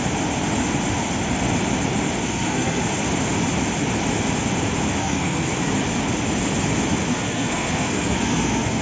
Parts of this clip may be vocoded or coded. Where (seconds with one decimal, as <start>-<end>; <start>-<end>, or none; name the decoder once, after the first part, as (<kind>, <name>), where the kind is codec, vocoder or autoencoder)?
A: 2.2-2.8 (codec, SNAC); 5.0-5.5; 7.1-8.8